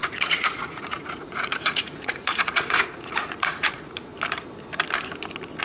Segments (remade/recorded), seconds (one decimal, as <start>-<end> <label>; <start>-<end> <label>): 0.0-4.1 remade; 4.1-5.6 recorded